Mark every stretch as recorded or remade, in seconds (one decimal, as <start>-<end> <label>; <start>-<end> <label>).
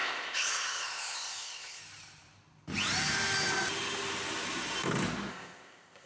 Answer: 0.0-1.8 remade; 1.8-5.3 recorded; 5.3-6.1 remade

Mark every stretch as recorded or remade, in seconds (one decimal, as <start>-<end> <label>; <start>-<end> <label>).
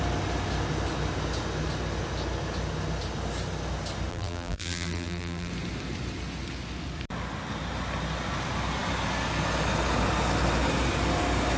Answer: 0.0-4.1 recorded; 4.1-5.5 remade; 5.5-11.6 recorded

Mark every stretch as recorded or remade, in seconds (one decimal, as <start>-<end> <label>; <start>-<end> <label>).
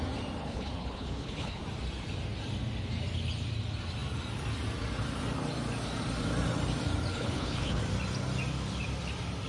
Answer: 0.0-0.4 recorded; 0.4-1.6 remade; 1.6-7.1 recorded; 7.1-7.8 remade; 7.8-9.5 recorded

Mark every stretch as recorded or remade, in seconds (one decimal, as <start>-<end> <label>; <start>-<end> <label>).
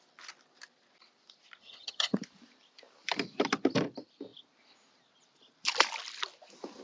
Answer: 0.0-1.6 recorded; 1.6-2.2 remade; 2.2-6.8 recorded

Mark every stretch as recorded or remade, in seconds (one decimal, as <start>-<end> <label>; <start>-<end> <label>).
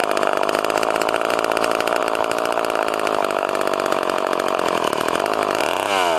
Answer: 0.0-2.0 recorded; 2.0-5.6 remade; 5.6-6.2 recorded